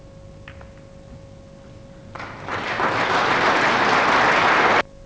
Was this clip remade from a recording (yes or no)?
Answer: no